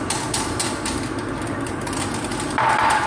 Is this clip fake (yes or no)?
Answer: no